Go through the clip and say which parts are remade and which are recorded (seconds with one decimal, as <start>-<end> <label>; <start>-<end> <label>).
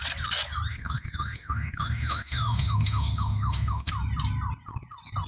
0.0-0.7 recorded; 0.7-3.9 remade; 3.9-5.3 recorded